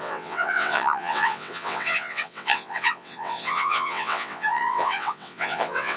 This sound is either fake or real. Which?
fake